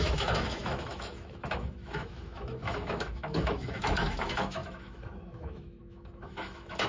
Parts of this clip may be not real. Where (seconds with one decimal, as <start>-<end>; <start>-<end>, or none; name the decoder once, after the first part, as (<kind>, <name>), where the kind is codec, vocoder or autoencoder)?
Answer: 0.0-6.9 (autoencoder, DAC-VAE)